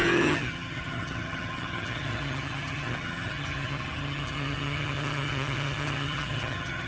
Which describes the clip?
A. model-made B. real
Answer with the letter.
A